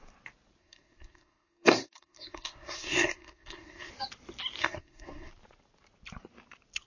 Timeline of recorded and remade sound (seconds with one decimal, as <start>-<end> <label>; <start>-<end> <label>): 0.0-0.6 recorded; 0.6-3.9 remade; 3.9-4.6 recorded; 4.6-5.3 remade; 5.3-6.9 recorded